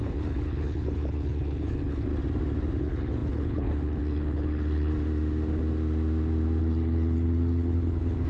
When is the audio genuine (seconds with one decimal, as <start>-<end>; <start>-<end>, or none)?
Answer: 2.1-2.8; 4.9-6.6